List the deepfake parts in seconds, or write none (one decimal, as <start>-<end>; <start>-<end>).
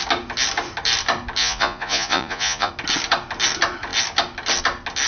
1.4-2.7